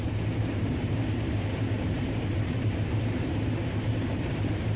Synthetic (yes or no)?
yes